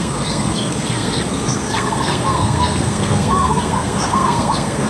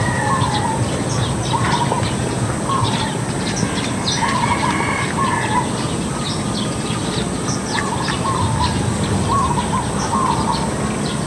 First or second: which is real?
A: second